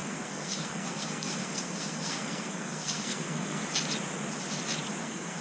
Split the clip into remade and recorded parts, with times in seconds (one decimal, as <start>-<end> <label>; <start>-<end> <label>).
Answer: 0.0-3.6 remade; 3.6-5.0 recorded; 5.0-5.4 remade